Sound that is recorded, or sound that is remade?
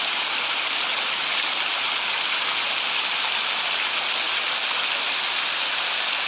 recorded